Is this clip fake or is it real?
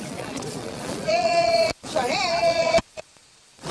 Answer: fake